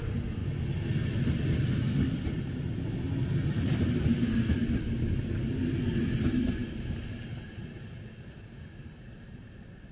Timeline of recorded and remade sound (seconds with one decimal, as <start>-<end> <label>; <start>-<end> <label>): 0.0-9.9 recorded